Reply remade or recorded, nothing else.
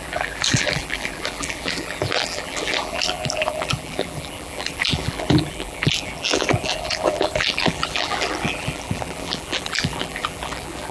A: remade